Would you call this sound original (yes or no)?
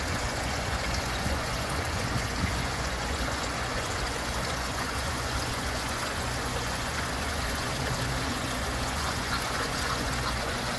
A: no